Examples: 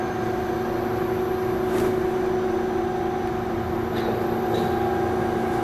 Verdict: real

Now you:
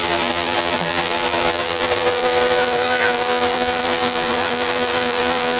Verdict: fake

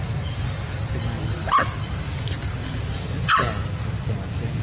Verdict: real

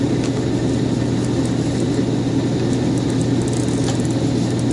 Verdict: real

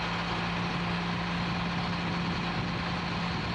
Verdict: real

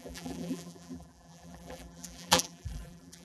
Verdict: fake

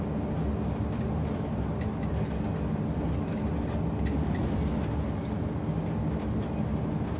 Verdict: real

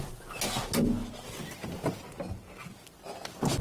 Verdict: real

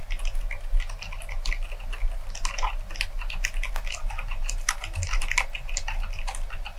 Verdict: real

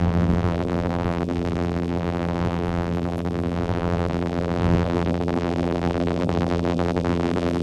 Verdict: fake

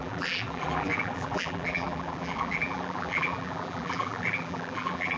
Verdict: fake